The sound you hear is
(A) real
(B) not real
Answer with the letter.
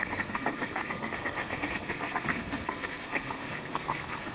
B